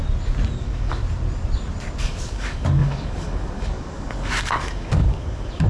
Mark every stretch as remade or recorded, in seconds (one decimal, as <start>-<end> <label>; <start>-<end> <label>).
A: 0.0-0.6 recorded; 0.6-1.0 remade; 1.0-2.0 recorded; 2.0-5.7 remade